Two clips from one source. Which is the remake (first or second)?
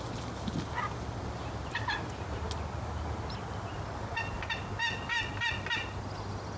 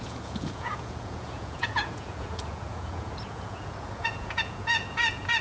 second